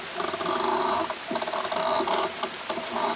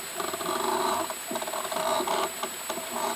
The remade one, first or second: second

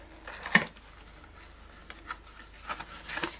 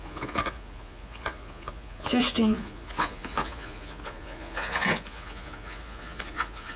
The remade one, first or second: second